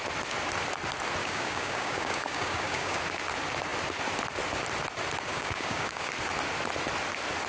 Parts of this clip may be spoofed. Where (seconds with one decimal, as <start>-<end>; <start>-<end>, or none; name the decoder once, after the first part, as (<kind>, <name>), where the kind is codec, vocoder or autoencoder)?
1.2-3.0 (codec, DAC); 5.3-6.1